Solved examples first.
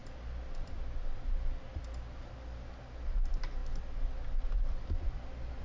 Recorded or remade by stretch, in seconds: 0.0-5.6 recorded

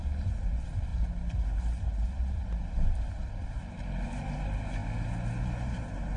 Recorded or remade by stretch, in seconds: 0.0-6.2 recorded

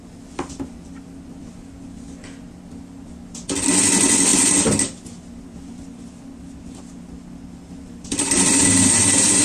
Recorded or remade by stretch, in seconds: 0.0-9.4 recorded

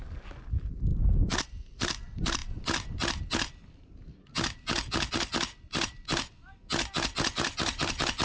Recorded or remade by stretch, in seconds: 0.0-8.2 recorded